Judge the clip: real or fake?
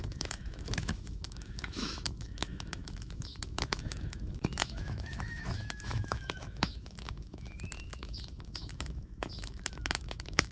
fake